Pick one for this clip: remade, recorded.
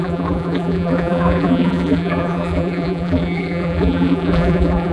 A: remade